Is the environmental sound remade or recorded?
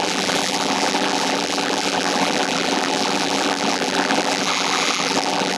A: remade